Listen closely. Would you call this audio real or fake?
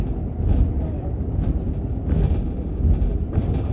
real